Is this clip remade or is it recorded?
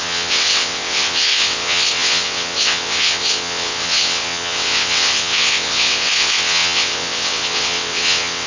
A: remade